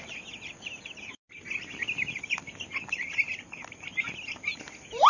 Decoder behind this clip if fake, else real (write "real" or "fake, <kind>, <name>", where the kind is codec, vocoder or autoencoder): real